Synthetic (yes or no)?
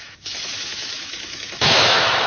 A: yes